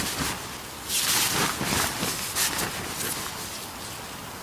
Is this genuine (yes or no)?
yes